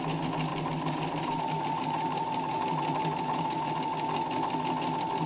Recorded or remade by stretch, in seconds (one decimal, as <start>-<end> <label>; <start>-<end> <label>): 0.0-0.5 recorded; 0.5-3.7 remade; 3.7-5.3 recorded